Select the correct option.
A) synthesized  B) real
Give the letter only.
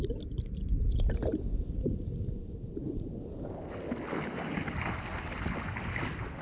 B